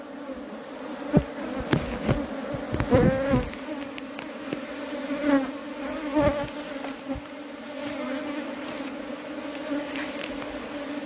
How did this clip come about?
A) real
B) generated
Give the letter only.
A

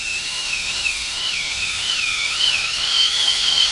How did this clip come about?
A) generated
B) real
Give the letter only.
A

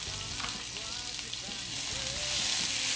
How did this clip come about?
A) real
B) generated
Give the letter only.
A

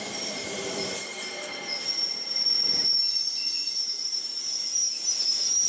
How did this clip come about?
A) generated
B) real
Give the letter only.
A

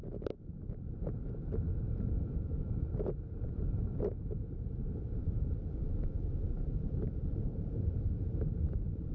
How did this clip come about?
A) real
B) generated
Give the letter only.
B